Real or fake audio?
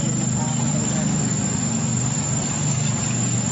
real